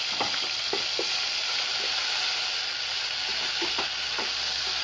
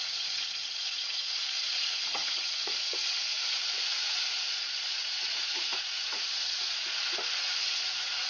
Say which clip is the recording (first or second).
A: first